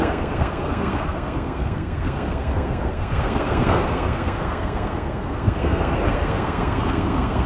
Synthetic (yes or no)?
yes